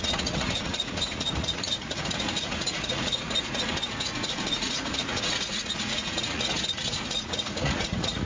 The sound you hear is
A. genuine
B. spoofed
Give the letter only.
B